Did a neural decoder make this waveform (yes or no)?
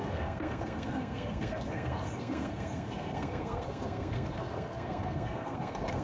yes